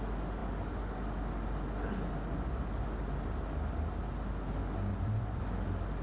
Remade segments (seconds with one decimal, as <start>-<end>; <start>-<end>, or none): 4.9-5.4